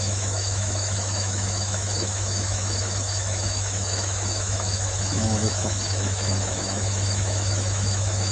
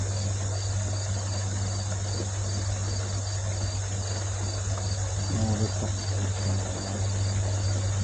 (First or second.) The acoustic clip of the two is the second